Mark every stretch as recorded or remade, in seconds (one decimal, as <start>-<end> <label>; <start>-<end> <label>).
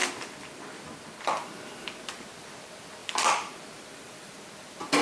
0.0-1.2 remade; 1.2-3.0 recorded; 3.0-4.3 remade; 4.3-5.0 recorded